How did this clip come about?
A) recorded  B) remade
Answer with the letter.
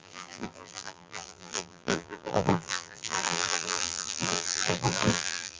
B